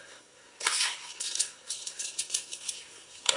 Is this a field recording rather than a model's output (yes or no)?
no